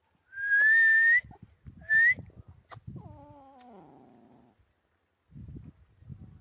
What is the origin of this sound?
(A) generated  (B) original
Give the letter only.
B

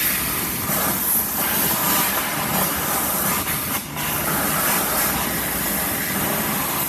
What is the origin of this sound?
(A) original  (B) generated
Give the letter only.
A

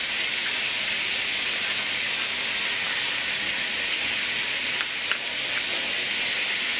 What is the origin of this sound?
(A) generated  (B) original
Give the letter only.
B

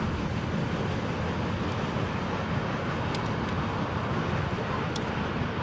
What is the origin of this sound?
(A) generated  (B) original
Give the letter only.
B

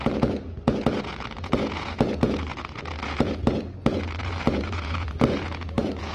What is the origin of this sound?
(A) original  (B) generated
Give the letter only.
B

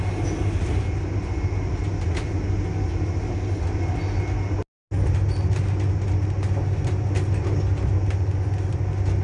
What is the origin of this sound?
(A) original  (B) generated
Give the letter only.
A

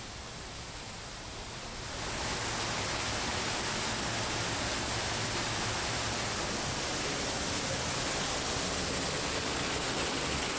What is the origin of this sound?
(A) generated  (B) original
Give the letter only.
B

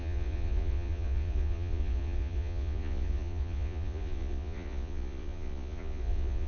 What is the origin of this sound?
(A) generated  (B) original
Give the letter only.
A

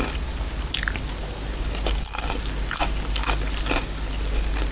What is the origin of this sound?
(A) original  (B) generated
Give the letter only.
A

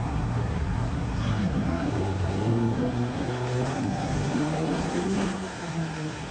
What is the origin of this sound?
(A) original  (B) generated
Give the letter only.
B